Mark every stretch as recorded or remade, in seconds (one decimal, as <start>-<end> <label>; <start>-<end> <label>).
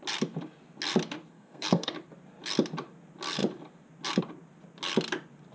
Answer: 0.0-1.3 recorded; 1.3-1.9 remade; 1.9-5.5 recorded